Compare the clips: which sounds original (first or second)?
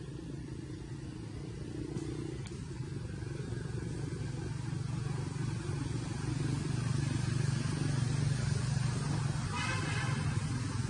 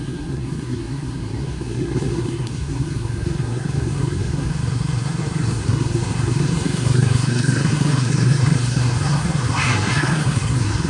first